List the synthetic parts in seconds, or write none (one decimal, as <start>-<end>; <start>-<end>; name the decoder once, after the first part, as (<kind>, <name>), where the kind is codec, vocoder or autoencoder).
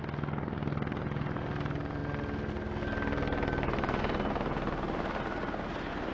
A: none